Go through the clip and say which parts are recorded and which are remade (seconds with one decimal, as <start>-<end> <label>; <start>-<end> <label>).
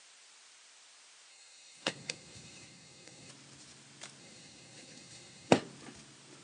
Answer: 0.0-1.3 recorded; 1.3-3.3 remade; 3.3-4.2 recorded; 4.2-5.5 remade; 5.5-6.4 recorded